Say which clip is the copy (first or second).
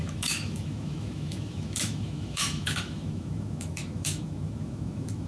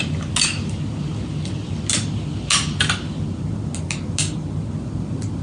first